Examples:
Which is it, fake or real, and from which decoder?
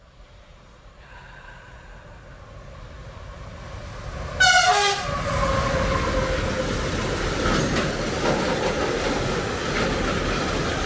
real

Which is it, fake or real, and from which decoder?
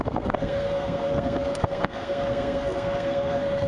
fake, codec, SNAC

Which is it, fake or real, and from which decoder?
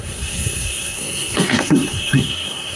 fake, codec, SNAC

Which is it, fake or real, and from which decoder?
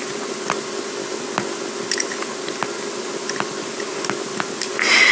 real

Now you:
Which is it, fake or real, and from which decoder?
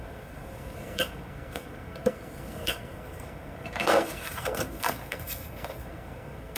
fake, codec, SNAC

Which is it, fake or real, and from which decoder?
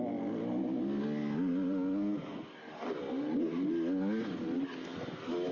real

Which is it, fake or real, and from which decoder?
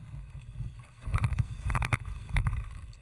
fake, codec, SNAC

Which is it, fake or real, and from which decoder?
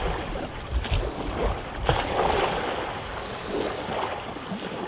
real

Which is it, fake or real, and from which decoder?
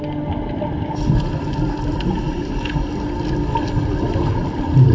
real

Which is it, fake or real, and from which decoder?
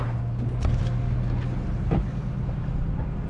real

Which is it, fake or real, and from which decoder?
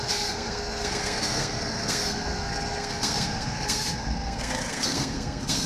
fake, codec, SNAC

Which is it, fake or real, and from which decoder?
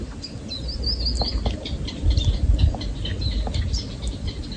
real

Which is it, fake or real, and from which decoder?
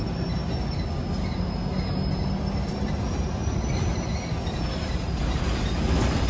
real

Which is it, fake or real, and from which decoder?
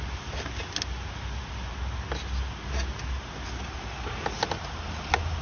real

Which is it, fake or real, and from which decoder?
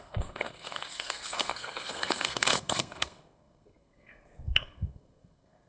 fake, codec, SNAC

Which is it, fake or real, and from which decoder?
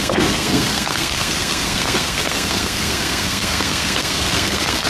fake, codec, SNAC